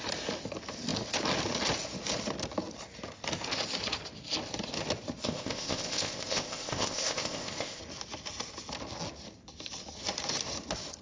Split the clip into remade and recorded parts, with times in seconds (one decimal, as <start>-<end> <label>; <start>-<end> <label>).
0.0-5.2 recorded; 5.2-7.8 remade; 7.8-11.0 recorded